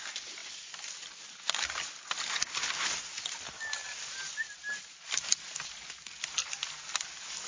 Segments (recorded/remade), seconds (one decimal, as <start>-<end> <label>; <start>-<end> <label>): 0.0-7.5 recorded